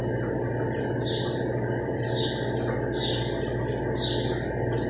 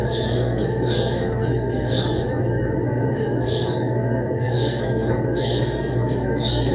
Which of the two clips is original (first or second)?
first